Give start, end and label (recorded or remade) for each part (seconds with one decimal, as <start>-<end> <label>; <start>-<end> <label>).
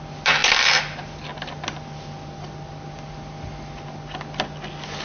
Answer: 0.0-5.0 recorded